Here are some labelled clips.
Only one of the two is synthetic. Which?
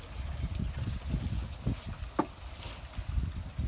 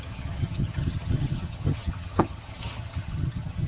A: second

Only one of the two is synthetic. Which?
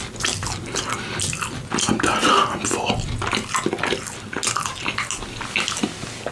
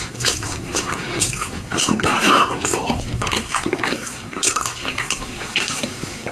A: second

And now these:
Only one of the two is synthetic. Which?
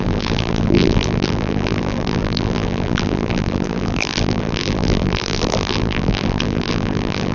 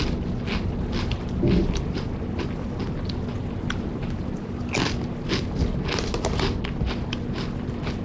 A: first